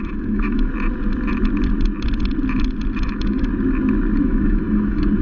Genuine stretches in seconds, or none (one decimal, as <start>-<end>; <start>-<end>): 0.7-3.0; 3.5-4.2